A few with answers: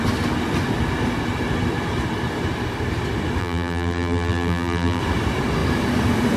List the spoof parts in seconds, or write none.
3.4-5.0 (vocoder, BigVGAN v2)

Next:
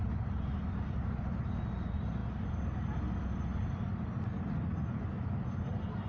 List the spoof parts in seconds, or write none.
0.0-2.2 (vocoder, BigVGAN v2); 5.3-6.1

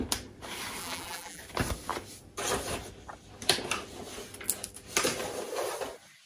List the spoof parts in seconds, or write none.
0.8-1.4 (vocoder, BigVGAN v2)

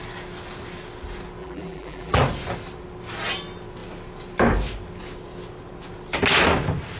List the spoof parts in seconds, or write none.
1.4-2.2 (vocoder, BigVGAN v2)

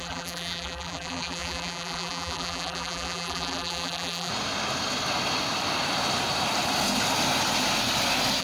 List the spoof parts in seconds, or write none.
0.0-4.3 (vocoder, BigVGAN v2)

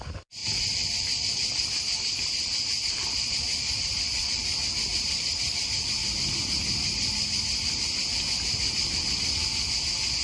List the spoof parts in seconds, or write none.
0.4-4.3 (vocoder, BigVGAN v2)

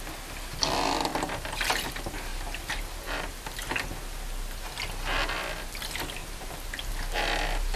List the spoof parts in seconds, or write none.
1.1-1.9 (vocoder, BigVGAN v2); 2.3-3.3; 6.2-6.9

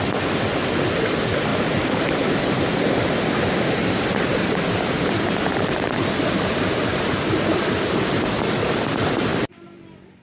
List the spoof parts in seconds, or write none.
1.5-2.5 (vocoder, BigVGAN v2); 3.8-8.8